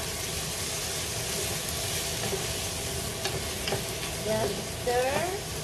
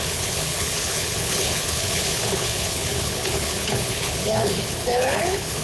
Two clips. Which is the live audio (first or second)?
first